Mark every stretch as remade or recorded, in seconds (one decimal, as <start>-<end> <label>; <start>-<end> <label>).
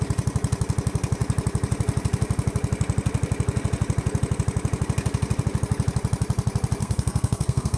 0.0-6.8 recorded; 6.8-7.8 remade